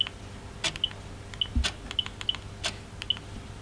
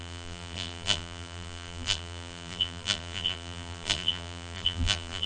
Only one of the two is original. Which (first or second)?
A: first